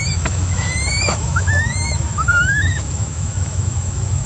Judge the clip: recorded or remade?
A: remade